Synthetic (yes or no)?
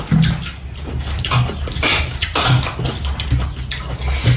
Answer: no